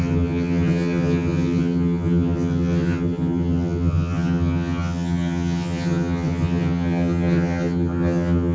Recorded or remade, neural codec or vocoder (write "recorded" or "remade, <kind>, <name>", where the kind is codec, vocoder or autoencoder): remade, vocoder, HiFi-GAN